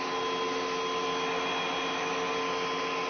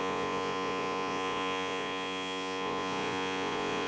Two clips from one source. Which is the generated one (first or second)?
second